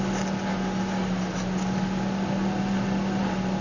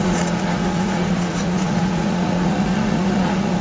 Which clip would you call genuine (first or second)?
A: first